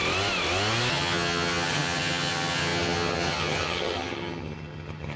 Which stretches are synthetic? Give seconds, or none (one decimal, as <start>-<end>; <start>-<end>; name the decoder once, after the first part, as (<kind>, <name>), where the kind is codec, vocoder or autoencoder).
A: 0.9-5.2 (vocoder, HiFi-GAN)